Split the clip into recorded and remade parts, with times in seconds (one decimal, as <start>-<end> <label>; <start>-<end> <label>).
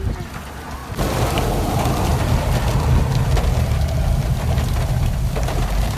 0.0-6.0 recorded